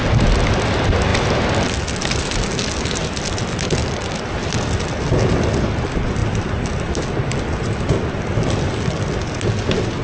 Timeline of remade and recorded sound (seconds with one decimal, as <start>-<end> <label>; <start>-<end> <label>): 0.0-6.2 recorded; 6.2-9.0 remade; 9.0-10.0 recorded